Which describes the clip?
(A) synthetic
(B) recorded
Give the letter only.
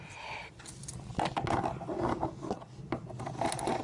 B